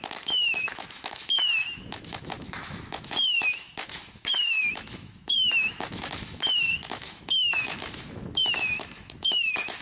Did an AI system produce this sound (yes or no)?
yes